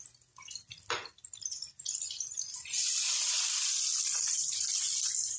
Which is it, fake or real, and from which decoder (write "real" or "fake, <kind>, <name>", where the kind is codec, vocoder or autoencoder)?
real